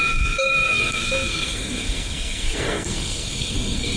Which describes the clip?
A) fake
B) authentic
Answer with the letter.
A